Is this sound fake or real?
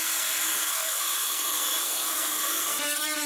fake